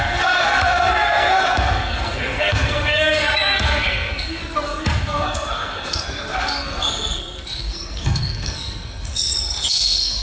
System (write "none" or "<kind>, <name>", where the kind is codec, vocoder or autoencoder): codec, SNAC